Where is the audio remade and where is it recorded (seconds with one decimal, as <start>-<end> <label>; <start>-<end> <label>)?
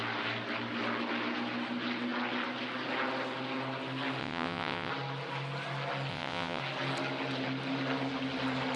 0.0-4.2 recorded; 4.2-4.9 remade; 4.9-6.1 recorded; 6.1-6.6 remade; 6.6-8.8 recorded